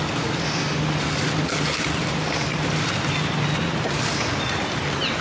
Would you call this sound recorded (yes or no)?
yes